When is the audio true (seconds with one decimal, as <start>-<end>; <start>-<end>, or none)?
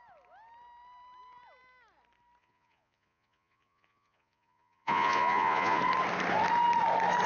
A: 0.0-2.4; 5.8-7.3